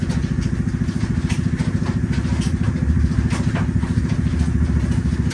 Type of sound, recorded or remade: recorded